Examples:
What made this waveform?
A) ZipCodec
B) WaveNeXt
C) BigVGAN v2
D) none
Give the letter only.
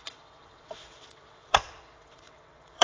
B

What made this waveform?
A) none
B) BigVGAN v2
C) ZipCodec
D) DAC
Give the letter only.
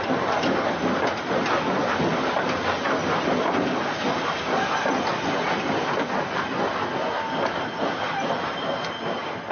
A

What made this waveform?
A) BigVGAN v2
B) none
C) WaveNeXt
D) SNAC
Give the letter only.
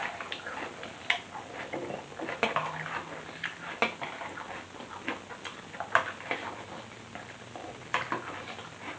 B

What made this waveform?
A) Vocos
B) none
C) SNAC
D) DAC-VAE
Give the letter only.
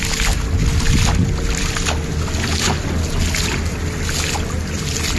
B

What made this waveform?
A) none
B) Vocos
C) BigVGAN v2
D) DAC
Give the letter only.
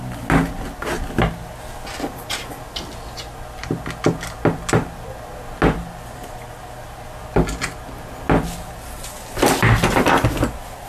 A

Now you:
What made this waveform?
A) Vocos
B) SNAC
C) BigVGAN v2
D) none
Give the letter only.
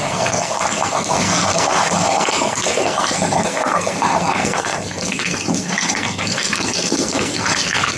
B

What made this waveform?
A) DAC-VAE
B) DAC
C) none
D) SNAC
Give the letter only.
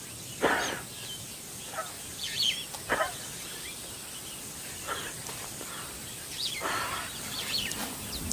C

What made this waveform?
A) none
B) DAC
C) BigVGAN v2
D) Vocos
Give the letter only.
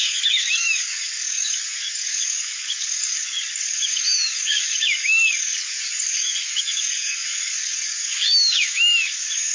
B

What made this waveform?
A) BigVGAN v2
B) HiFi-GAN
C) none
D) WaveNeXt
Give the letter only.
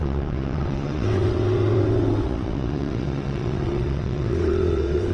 D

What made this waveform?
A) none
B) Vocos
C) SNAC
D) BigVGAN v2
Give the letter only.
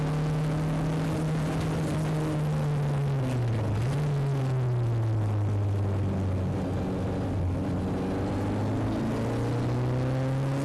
A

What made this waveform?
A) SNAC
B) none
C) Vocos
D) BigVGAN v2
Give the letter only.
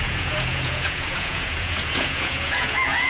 C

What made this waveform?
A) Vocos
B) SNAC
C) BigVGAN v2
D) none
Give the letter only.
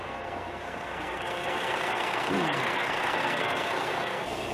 B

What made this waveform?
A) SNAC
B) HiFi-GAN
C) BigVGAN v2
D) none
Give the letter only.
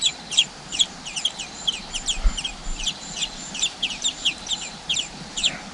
C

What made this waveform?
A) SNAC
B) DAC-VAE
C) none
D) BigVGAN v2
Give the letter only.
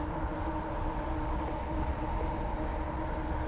C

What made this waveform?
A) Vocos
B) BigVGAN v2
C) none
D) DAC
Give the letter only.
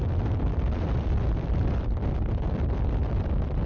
B